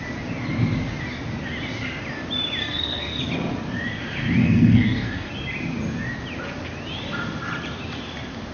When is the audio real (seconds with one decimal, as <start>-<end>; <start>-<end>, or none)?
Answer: 0.0-2.6; 3.2-4.4; 5.3-8.5